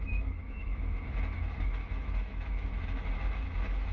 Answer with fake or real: fake